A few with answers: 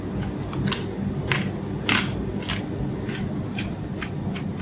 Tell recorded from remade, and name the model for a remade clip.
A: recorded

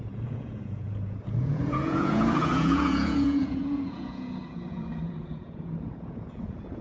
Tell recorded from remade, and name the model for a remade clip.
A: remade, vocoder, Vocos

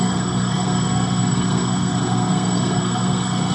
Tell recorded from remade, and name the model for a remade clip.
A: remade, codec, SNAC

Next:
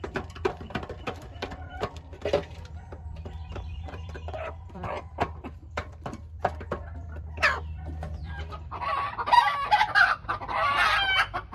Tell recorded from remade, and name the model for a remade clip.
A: remade, vocoder, BigVGAN v2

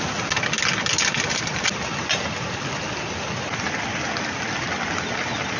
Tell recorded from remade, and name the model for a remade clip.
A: recorded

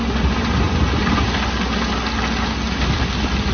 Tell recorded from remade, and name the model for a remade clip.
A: recorded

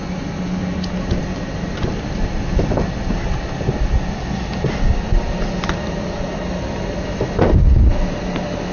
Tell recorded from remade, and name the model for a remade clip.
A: recorded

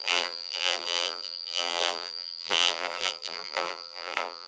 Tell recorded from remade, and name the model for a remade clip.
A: remade, vocoder, BigVGAN v2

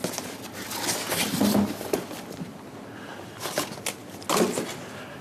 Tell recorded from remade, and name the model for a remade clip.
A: recorded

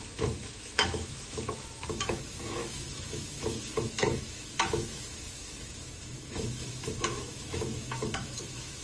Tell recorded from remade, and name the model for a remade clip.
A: remade, autoencoder, DAC-VAE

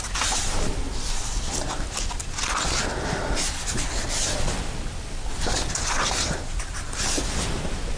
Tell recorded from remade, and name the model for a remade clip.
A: recorded